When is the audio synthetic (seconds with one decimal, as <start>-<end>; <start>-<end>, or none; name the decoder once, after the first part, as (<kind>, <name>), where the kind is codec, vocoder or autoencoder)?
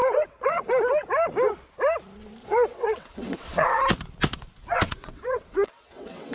0.0-0.7 (vocoder, WaveNeXt); 2.4-3.8; 4.7-6.3